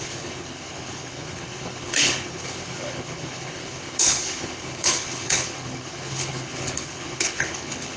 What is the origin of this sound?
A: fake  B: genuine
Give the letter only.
A